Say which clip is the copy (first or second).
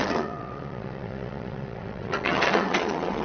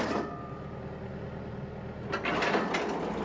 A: first